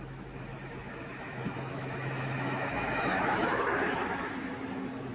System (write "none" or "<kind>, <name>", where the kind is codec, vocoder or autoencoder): autoencoder, DAC-VAE